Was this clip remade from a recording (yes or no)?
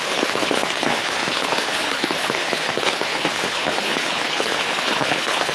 yes